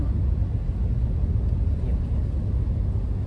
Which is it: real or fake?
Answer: real